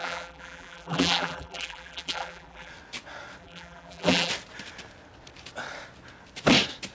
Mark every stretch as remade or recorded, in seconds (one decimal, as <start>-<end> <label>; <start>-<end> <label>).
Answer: 0.0-2.7 remade; 2.7-3.4 recorded; 3.4-4.3 remade; 4.3-6.9 recorded